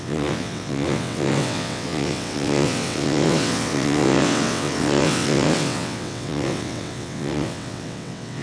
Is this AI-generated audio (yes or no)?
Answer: yes